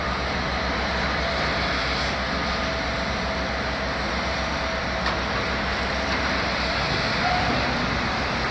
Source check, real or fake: real